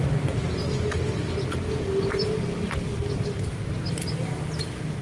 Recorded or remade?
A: recorded